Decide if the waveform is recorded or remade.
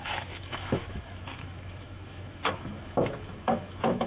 remade